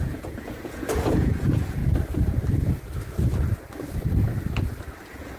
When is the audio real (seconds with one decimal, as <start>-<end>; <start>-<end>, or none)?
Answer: 1.8-5.0